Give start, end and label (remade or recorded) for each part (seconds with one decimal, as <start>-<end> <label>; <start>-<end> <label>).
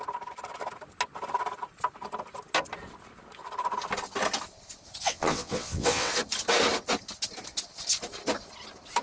0.0-5.0 recorded; 5.0-6.1 remade; 6.1-9.0 recorded